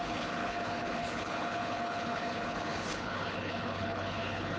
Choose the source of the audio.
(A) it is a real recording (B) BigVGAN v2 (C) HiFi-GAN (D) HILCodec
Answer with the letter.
D